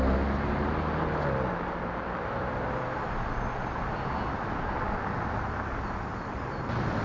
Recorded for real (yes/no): yes